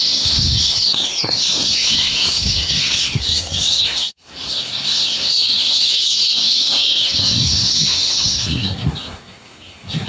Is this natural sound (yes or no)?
no